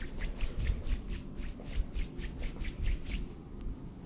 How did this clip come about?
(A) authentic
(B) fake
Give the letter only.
A